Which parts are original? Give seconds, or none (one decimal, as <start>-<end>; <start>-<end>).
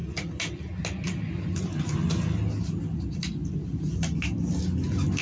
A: 0.0-5.2